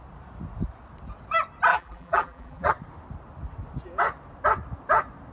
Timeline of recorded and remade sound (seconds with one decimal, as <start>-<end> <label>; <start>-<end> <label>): 0.0-1.7 recorded; 1.7-2.7 remade; 2.7-5.3 recorded